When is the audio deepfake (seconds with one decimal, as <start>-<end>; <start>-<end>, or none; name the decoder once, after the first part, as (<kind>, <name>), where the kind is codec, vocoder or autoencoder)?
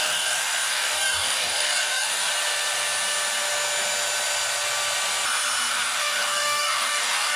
0.0-2.3 (codec, DAC); 5.7-7.4